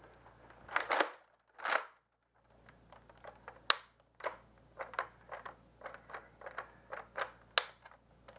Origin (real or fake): real